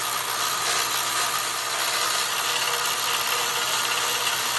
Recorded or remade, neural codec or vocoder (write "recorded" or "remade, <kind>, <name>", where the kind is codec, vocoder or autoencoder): recorded